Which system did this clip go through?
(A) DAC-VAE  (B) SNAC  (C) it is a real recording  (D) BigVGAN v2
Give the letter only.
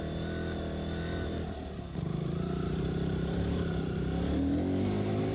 C